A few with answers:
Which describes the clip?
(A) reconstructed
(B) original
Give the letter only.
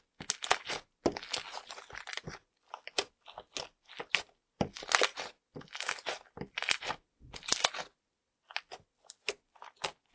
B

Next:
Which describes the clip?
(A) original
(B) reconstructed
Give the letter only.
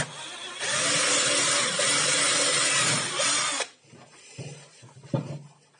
A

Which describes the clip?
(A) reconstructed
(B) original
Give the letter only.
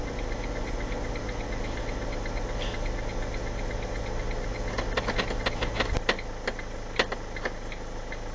B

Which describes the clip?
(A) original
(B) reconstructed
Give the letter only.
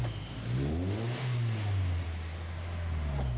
A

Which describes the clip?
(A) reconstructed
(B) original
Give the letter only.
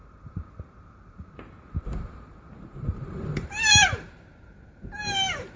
A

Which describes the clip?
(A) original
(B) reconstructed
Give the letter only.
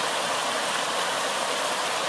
A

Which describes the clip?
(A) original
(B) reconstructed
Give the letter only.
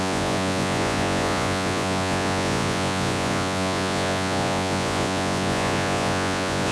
B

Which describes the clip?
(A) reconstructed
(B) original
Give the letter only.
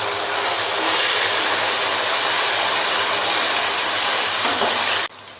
B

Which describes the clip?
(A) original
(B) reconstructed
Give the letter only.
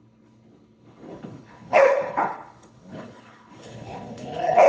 B